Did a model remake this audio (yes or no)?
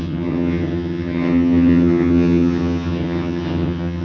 yes